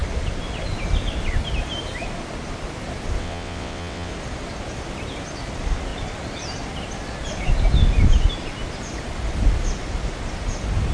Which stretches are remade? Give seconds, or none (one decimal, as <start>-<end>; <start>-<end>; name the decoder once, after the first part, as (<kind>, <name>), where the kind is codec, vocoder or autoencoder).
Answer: 3.2-4.1 (vocoder, WaveNeXt)